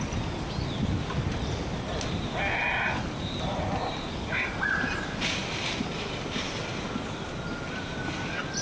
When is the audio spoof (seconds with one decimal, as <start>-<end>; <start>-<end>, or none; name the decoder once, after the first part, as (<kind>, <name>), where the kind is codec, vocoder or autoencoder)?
3.2-6.3 (vocoder, BigVGAN v2)

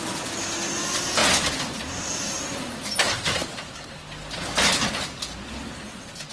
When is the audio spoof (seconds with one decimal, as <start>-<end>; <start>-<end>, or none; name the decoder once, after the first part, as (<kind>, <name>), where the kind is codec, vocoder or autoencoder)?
none

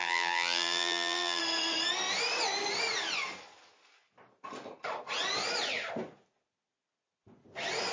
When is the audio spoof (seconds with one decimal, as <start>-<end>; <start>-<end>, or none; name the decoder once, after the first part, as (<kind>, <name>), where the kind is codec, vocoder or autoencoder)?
0.0-1.4 (vocoder, BigVGAN v2)